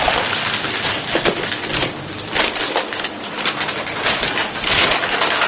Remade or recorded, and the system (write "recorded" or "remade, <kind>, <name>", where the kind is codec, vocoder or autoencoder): remade, vocoder, BigVGAN v2